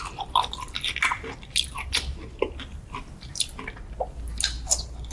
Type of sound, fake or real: real